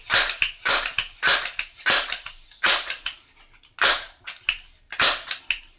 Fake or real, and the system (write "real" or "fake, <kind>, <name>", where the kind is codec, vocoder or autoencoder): real